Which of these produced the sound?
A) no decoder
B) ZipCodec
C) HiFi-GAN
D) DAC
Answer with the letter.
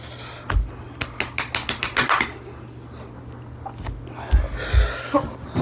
A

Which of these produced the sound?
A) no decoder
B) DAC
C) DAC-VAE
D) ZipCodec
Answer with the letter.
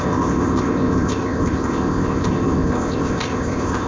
D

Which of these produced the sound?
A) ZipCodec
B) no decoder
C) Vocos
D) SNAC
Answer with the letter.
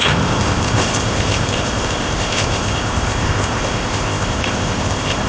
A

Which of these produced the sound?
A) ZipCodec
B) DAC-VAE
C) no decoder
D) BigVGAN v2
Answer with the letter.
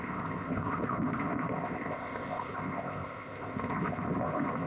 A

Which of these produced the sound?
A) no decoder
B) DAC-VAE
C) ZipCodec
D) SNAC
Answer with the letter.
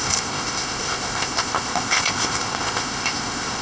C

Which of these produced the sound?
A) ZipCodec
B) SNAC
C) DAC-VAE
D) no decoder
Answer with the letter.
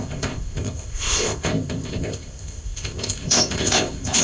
A